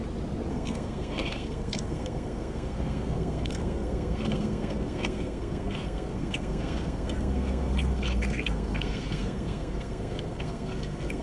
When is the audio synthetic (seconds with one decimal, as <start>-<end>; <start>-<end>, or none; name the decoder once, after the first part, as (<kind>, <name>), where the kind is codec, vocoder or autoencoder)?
0.5-11.2 (codec, SNAC)